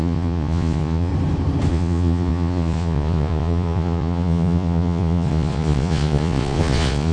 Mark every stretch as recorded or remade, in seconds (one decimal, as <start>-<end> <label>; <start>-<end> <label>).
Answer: 0.0-1.1 remade; 1.1-1.7 recorded; 1.7-7.1 remade